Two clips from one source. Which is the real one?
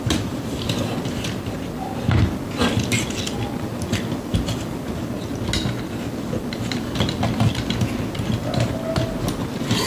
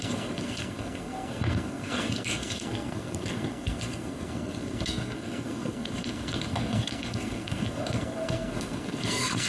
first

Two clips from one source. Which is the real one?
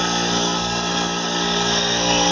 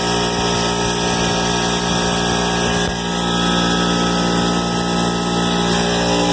second